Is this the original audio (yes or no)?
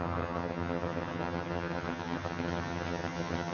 no